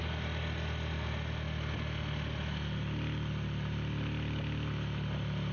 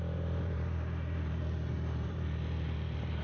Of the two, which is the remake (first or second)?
second